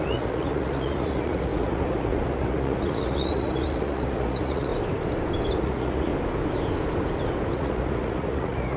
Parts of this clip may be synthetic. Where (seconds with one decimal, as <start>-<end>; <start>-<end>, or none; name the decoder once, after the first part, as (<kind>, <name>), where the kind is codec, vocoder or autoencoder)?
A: 0.0-4.7 (vocoder, Vocos); 5.6-6.1; 7.5-8.8